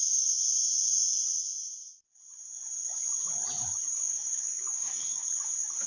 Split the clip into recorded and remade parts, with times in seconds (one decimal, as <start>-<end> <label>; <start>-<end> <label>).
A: 0.0-0.4 remade; 0.4-3.9 recorded; 3.9-5.9 remade